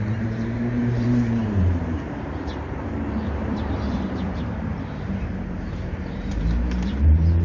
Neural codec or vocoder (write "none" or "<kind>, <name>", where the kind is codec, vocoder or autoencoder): vocoder, BigVGAN v2